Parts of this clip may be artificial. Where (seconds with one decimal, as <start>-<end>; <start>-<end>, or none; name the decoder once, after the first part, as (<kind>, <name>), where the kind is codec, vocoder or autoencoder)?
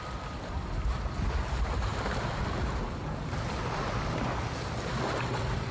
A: none